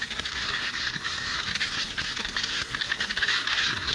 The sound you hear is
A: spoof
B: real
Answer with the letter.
A